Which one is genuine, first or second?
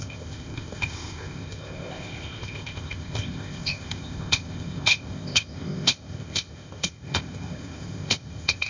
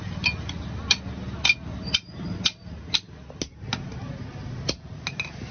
second